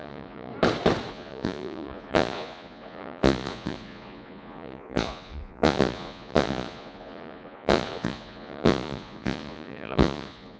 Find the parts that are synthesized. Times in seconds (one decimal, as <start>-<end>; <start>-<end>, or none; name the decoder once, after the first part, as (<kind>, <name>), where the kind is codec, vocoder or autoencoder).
0.0-0.5 (vocoder, Vocos); 1.1-10.6